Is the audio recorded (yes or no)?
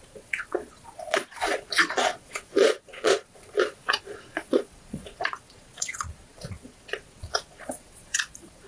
no